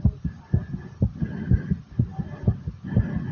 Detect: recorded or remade recorded